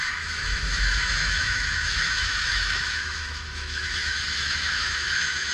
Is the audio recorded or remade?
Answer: remade